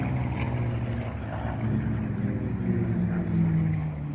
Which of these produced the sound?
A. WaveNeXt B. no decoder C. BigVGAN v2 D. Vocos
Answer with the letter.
B